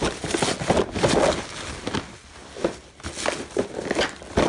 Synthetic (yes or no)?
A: no